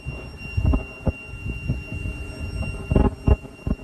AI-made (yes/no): no